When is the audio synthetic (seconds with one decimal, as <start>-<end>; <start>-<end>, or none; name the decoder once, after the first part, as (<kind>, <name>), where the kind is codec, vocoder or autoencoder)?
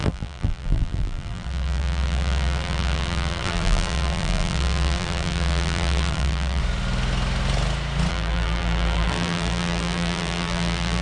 0.0-6.6 (vocoder, BigVGAN v2); 8.1-11.0